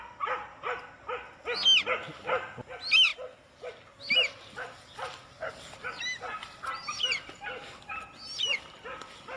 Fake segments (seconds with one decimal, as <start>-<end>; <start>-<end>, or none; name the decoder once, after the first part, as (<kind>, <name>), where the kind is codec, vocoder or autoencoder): none